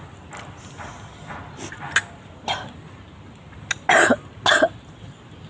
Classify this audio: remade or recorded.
recorded